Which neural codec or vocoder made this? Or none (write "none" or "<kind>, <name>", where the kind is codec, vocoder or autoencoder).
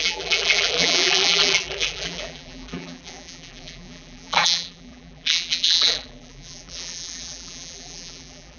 vocoder, BigVGAN v2